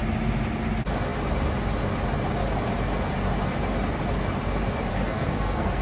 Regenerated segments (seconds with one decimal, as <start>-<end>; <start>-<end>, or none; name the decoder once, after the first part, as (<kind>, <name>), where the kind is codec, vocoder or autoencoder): 4.9-5.8 (codec, SNAC)